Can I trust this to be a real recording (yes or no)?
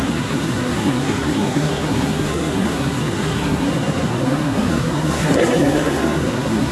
no